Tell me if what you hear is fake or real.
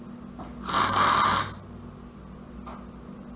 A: real